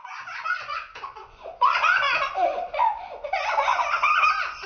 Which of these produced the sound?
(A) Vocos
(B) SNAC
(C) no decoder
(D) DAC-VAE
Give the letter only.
A